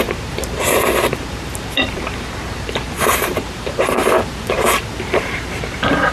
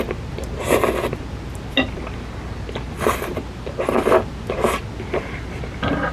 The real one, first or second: second